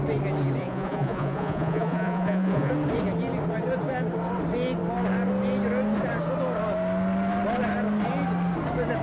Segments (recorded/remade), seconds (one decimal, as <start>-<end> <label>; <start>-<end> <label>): 0.0-0.6 recorded; 0.6-2.7 remade; 2.7-9.0 recorded